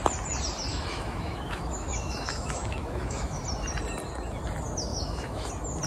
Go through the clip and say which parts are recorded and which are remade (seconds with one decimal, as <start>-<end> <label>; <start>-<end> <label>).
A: 0.0-0.7 recorded; 0.7-3.4 remade; 3.4-4.9 recorded; 4.9-5.5 remade; 5.5-5.9 recorded